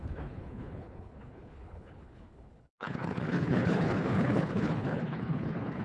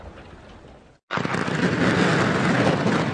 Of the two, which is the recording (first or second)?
second